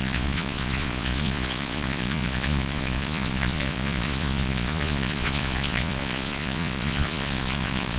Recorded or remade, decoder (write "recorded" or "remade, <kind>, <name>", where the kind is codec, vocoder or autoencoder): remade, vocoder, Vocos